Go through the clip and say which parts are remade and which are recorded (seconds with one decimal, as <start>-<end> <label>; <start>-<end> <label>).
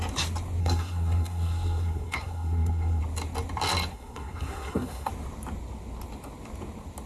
0.0-0.6 recorded; 0.6-3.0 remade; 3.0-3.9 recorded; 3.9-5.1 remade; 5.1-7.1 recorded